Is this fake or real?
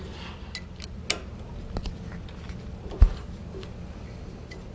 real